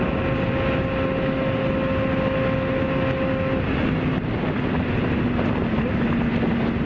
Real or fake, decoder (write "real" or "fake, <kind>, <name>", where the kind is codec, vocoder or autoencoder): real